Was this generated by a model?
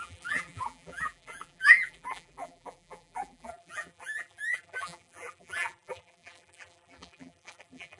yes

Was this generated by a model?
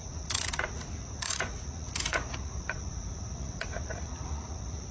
yes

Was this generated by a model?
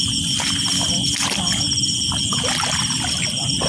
no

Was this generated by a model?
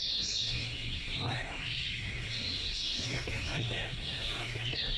yes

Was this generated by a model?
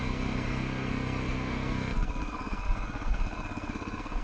yes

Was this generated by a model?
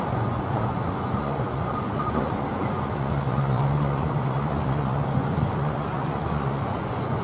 yes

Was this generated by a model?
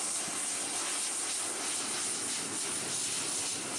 no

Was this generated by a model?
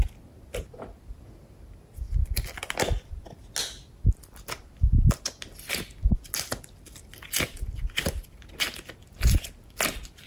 no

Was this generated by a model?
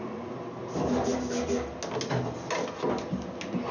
no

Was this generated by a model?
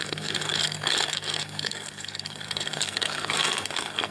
yes